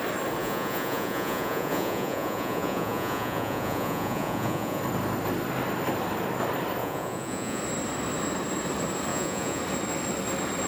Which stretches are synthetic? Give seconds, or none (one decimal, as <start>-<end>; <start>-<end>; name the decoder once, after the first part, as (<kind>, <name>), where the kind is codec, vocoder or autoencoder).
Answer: 0.4-4.8 (vocoder, Vocos); 6.8-7.6; 9.1-9.6